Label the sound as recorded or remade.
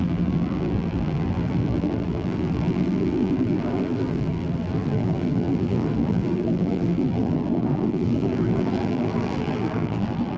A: remade